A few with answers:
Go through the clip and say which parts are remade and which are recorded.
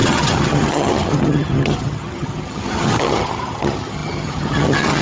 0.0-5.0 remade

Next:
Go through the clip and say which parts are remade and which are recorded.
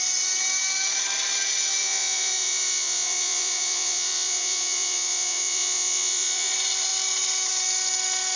0.0-1.8 recorded; 1.8-6.5 remade; 6.5-8.4 recorded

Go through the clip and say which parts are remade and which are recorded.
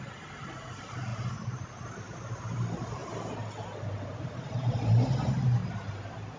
0.0-1.1 remade; 1.1-1.8 recorded; 1.8-3.0 remade; 3.0-4.7 recorded; 4.7-5.6 remade; 5.6-6.4 recorded